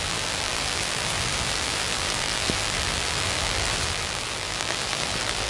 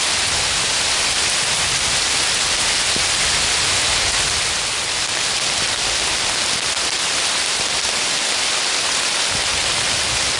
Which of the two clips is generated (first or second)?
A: first